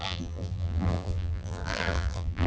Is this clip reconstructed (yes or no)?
yes